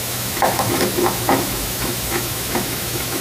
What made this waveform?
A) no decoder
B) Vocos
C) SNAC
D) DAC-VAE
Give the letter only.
D